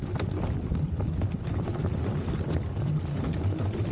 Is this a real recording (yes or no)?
yes